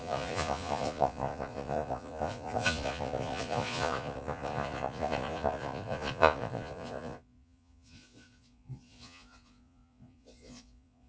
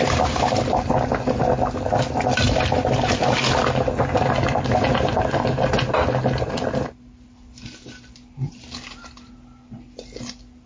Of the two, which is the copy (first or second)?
first